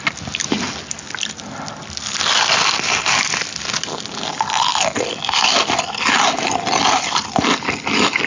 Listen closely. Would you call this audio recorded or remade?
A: recorded